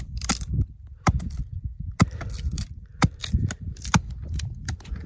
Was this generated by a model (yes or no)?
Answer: no